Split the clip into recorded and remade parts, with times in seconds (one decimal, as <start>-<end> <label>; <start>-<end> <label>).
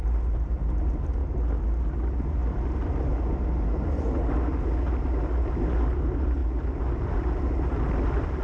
0.0-1.2 remade; 1.2-5.2 recorded; 5.2-8.4 remade